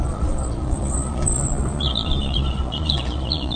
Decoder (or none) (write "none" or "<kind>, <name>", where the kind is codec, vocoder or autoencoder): vocoder, Vocos